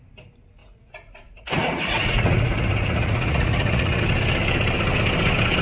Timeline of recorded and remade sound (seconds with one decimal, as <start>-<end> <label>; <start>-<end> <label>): 0.0-0.6 recorded; 0.6-4.0 remade; 4.0-5.6 recorded